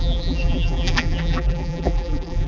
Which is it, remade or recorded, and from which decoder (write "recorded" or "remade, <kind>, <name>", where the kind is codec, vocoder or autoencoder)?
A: remade, vocoder, BigVGAN v2